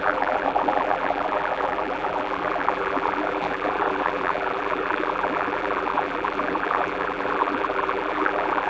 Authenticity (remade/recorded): remade